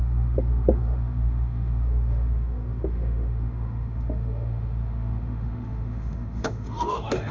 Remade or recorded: remade